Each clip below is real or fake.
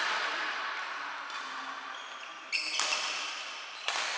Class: real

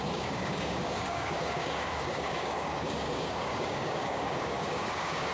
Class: fake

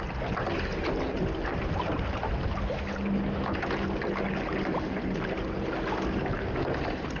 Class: real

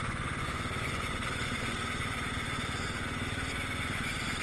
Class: fake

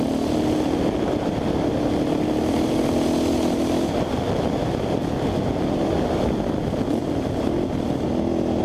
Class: real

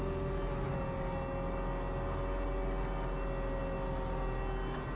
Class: real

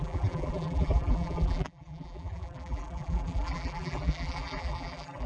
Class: fake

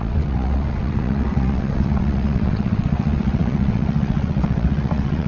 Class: fake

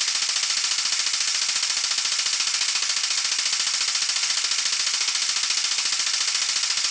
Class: real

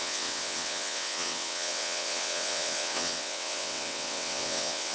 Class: fake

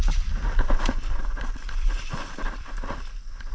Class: real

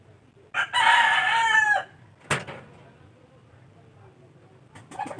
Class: real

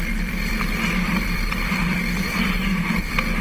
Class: fake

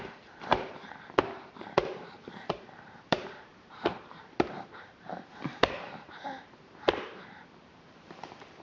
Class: fake